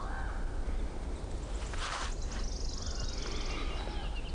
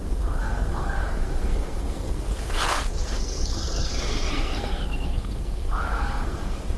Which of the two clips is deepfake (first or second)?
second